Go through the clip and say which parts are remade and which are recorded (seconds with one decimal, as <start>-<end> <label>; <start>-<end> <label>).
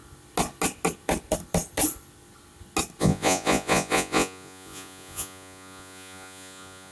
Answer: 0.0-3.0 recorded; 3.0-6.9 remade